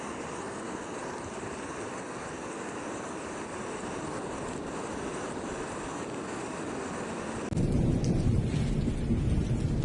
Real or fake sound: real